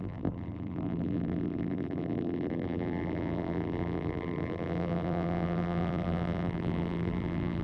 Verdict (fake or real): fake